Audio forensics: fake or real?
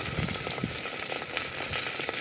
real